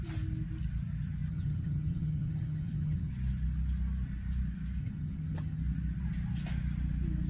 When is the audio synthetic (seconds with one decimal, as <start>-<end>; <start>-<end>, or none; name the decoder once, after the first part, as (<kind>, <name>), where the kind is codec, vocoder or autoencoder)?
1.3-3.1 (vocoder, HiFi-GAN); 4.8-5.6